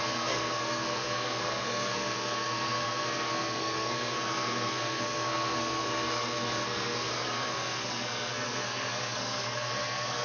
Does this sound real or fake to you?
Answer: fake